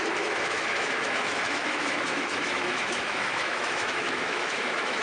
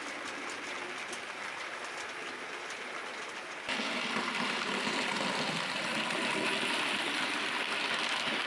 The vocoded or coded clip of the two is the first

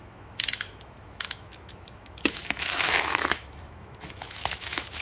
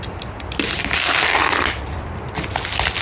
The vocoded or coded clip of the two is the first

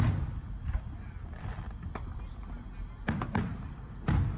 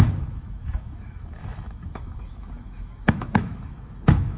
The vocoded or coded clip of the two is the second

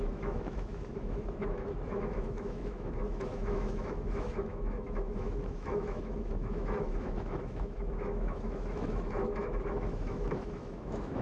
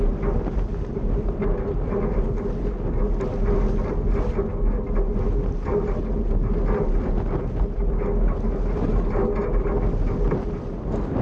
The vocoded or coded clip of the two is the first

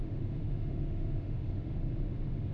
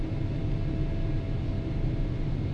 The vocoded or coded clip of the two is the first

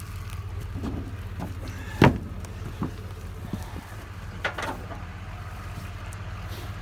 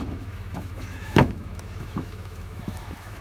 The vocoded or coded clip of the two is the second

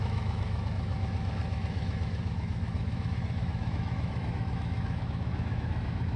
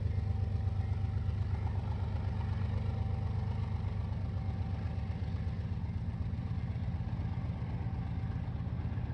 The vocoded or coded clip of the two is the first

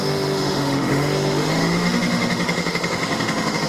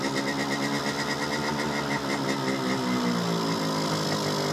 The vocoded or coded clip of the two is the first